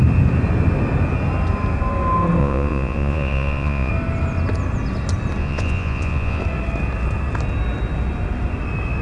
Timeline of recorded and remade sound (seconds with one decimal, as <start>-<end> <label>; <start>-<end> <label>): 0.0-2.4 recorded; 2.4-3.9 remade; 3.9-5.4 recorded; 5.4-6.4 remade; 6.4-9.0 recorded